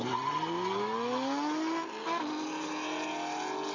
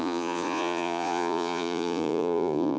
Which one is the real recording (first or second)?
first